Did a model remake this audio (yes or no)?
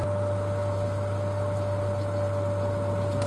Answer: no